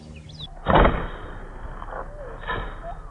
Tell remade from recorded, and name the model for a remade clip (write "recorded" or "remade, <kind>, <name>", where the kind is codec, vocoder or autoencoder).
recorded